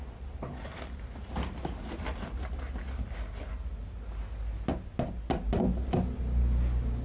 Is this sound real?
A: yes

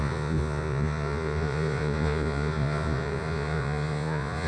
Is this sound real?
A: no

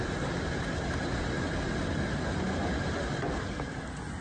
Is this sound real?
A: yes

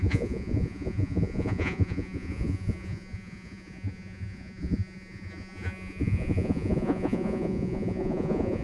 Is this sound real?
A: no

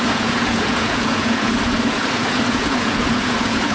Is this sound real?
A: no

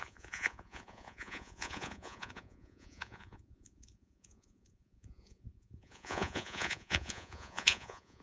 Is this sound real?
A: no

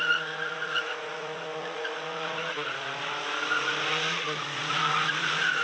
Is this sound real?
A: no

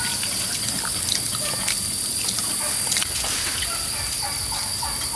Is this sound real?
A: yes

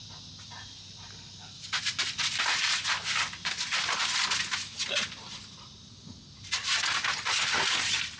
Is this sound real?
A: yes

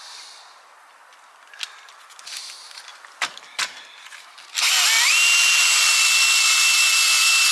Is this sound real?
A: yes